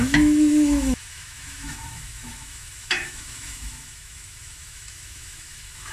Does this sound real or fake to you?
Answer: fake